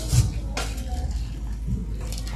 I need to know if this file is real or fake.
real